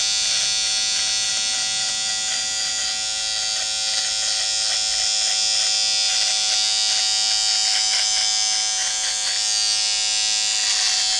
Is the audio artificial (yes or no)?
no